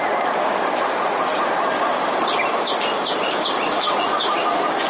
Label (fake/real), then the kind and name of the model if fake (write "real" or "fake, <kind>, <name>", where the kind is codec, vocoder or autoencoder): real